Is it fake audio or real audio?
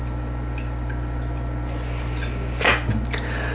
real